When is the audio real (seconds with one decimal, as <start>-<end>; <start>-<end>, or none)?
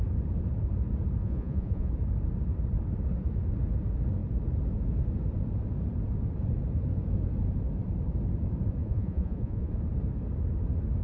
0.0-1.2; 1.9-8.8; 9.7-11.0